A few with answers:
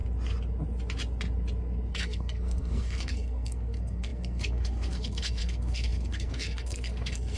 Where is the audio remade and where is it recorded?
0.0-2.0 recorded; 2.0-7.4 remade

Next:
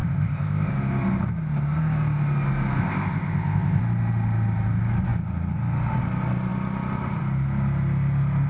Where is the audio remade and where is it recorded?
0.0-0.7 remade; 0.7-2.8 recorded; 2.8-3.8 remade; 3.8-8.5 recorded

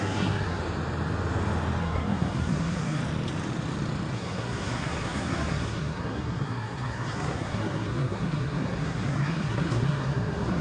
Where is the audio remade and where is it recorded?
0.0-0.6 remade; 0.6-1.8 recorded; 1.8-3.0 remade; 3.0-4.1 recorded; 4.1-10.6 remade

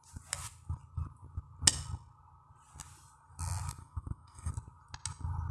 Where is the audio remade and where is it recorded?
0.0-3.8 recorded; 3.8-4.5 remade; 4.5-5.5 recorded